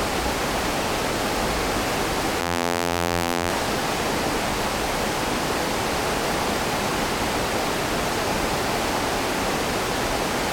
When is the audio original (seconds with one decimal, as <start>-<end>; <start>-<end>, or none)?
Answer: 0.0-2.4; 3.5-10.5

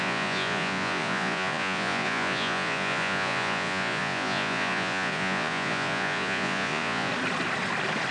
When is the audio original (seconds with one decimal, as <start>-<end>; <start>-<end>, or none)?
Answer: 7.1-8.1

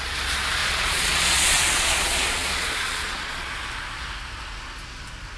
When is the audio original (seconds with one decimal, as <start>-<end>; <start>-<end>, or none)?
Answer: 0.0-0.6; 3.5-5.4

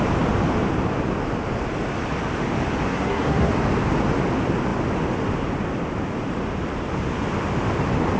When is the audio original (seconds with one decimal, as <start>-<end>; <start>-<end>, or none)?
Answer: 0.0-2.9; 3.5-8.2

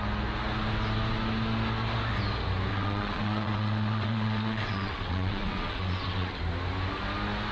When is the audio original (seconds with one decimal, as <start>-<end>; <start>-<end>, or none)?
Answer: 0.0-2.7; 6.4-7.5

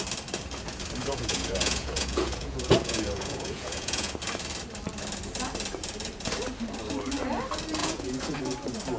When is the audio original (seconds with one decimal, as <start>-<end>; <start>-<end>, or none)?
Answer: 0.0-1.0; 4.1-7.8; 8.4-9.0